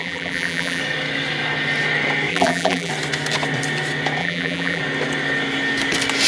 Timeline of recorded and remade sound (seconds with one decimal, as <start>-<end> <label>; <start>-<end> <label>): 0.0-0.8 remade; 0.8-2.3 recorded; 2.3-2.9 remade; 2.9-4.2 recorded; 4.2-4.8 remade; 4.8-6.3 recorded